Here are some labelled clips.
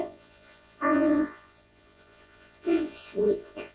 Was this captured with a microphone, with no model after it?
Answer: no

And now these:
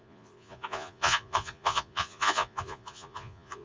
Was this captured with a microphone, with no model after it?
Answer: no